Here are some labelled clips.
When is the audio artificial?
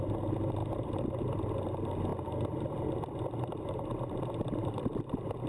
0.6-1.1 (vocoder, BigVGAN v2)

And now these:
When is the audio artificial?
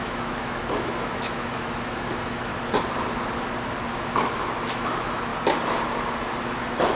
0.0-2.5 (autoencoder, DAC-VAE); 3.9-5.3; 6.6-7.0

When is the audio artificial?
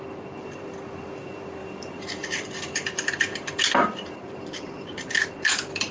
1.6-5.1 (vocoder, BigVGAN v2)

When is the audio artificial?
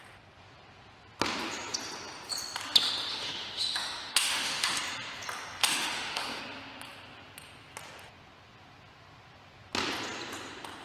3.1-4.8 (autoencoder, DAC-VAE); 5.6-6.4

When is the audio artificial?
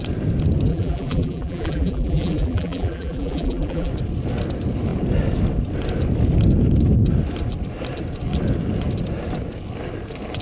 0.7-3.9 (vocoder, BigVGAN v2)